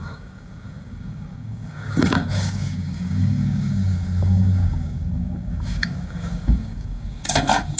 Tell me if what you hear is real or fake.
fake